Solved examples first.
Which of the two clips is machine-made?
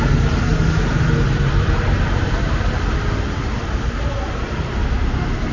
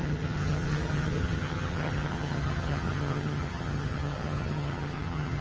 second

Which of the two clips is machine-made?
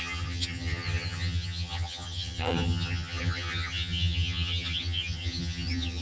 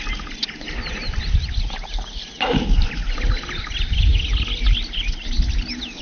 first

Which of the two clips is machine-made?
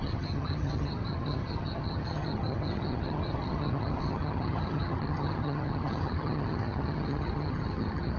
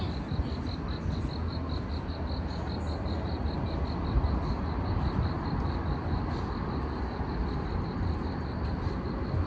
first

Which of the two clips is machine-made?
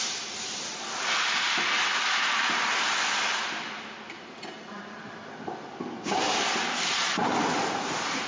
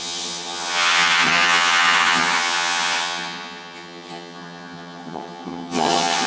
second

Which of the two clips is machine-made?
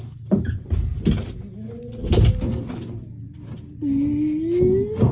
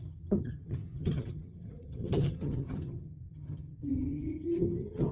second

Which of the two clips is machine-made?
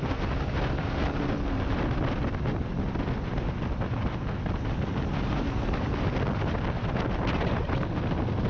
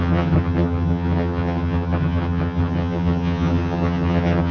second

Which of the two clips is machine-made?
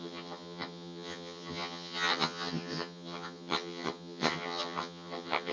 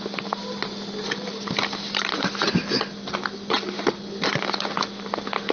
first